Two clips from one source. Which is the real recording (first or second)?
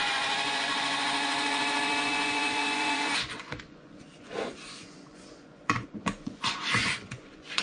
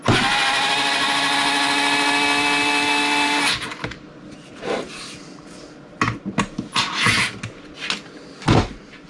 second